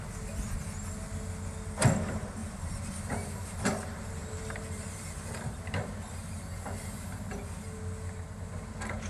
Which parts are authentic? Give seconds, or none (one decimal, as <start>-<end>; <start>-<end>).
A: 0.0-2.4; 5.5-9.1